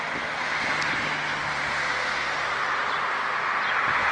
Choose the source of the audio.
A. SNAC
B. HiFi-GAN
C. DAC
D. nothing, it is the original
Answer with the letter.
D